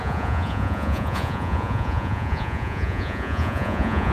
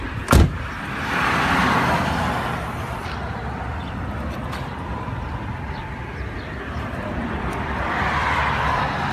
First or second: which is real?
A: second